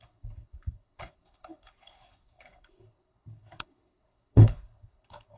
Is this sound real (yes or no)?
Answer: no